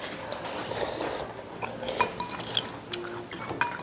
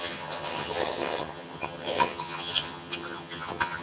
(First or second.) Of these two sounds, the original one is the first